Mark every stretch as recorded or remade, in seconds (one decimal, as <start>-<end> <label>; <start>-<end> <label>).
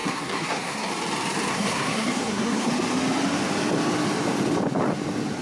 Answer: 0.0-0.9 remade; 0.9-1.5 recorded; 1.5-2.7 remade; 2.7-5.4 recorded